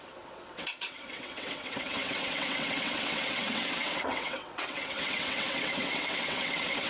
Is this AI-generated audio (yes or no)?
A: yes